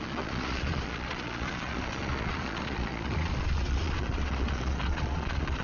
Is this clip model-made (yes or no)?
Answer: yes